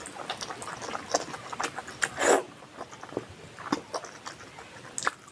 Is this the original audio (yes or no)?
yes